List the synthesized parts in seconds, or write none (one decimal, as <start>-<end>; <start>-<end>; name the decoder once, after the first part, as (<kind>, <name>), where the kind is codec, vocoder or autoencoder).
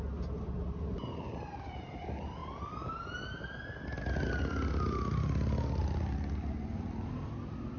none